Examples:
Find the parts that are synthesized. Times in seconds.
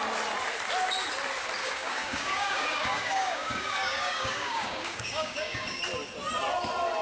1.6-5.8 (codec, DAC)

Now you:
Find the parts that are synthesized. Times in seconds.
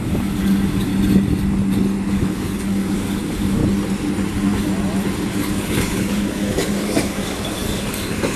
0.0-0.9 (codec, DAC); 2.1-3.6; 5.4-8.4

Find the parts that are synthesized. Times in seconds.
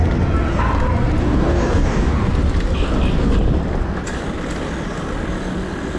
1.2-2.3 (codec, DAC)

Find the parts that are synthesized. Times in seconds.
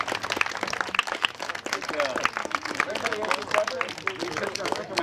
1.0-1.5 (codec, DAC); 2.4-3.5; 4.2-5.0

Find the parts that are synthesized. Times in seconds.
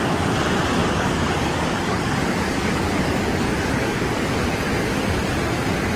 0.8-4.4 (codec, DAC)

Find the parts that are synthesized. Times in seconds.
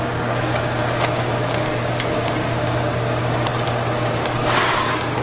0.0-3.5 (codec, DAC); 4.1-5.2